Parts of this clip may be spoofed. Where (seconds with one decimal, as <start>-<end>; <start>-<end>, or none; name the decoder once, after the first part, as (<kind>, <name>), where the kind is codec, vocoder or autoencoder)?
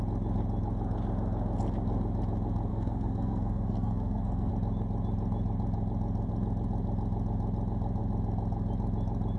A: 2.7-4.5 (codec, SNAC)